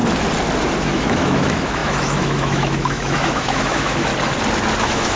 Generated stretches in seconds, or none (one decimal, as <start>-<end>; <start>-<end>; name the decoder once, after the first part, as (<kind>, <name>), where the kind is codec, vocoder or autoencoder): 0.8-4.1 (autoencoder, DAC-VAE); 4.8-5.2